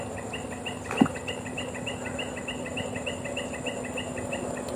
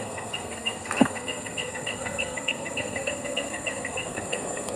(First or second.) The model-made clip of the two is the second